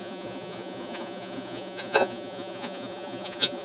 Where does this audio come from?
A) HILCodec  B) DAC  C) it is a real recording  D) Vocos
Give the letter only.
D